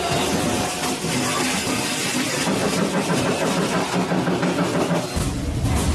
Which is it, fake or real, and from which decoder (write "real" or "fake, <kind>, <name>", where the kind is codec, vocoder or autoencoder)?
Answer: real